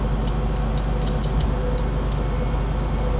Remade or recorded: recorded